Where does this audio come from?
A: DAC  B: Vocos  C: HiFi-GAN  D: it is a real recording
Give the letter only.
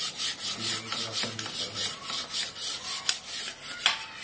D